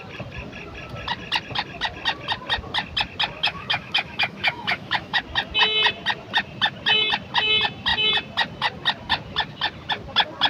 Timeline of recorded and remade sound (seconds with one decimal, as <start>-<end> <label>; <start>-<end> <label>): 0.0-3.4 recorded; 3.4-5.2 remade; 5.2-10.5 recorded